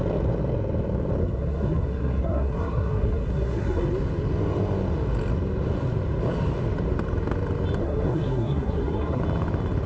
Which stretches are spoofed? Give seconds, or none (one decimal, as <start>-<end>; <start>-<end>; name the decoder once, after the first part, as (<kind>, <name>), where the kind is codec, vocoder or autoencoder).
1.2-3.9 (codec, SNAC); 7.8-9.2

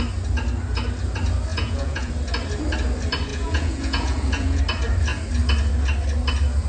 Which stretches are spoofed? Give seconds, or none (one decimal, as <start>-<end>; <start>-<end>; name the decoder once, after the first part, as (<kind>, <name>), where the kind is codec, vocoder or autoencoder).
1.5-2.1 (vocoder, Vocos); 3.3-4.6

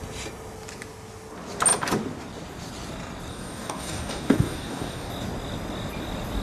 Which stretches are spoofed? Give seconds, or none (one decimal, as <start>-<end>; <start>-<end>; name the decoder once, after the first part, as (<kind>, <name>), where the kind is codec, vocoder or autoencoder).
3.3-5.1 (codec, DAC)

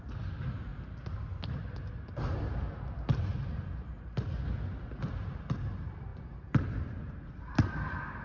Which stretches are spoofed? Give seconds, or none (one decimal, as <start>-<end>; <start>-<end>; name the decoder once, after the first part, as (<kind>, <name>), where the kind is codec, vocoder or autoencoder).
none

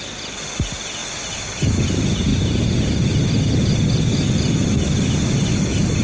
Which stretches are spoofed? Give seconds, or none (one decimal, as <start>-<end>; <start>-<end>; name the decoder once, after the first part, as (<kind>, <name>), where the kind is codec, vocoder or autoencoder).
none